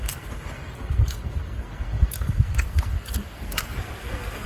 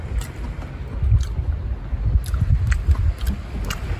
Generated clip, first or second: first